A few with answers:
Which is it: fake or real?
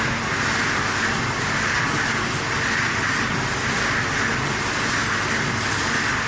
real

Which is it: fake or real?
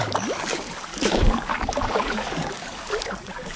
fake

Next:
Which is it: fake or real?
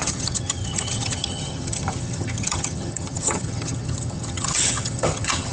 fake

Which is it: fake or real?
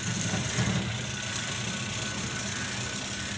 real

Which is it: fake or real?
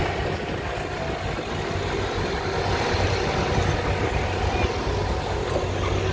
real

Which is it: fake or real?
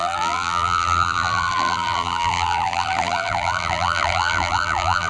fake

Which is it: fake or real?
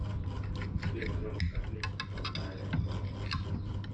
real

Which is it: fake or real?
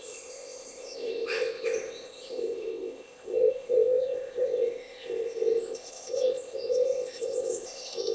fake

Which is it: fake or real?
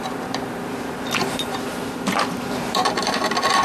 fake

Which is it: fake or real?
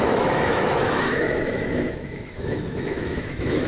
fake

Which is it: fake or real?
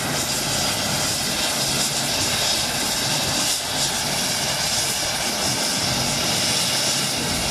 real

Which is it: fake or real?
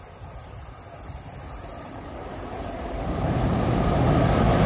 real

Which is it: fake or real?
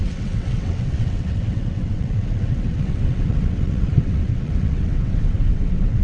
fake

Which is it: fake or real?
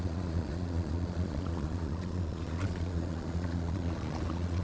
fake